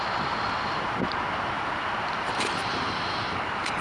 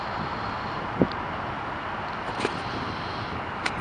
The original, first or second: second